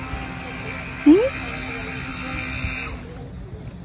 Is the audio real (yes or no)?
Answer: yes